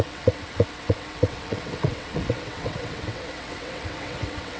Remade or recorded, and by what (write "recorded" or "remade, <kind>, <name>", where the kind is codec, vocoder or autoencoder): remade, vocoder, WaveNeXt